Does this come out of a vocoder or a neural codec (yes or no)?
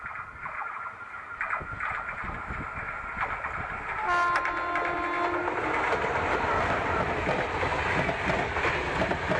no